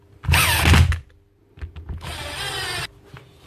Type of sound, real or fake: real